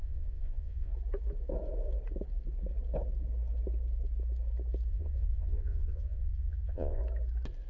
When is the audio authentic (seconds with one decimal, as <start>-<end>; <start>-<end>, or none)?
0.9-4.9; 7.0-7.7